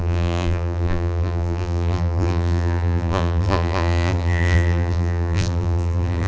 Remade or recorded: remade